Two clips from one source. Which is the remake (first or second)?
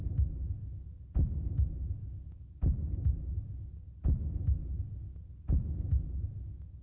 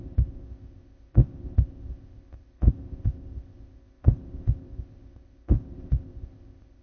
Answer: second